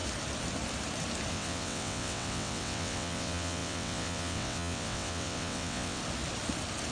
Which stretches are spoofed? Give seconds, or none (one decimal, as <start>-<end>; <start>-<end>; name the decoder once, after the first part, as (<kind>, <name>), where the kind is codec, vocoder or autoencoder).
1.3-6.0 (vocoder, WaveNeXt)